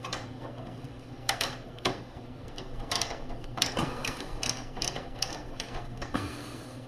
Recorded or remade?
remade